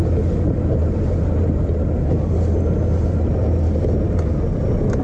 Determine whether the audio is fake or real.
real